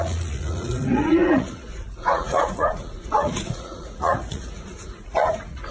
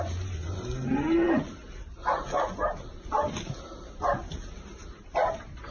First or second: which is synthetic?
first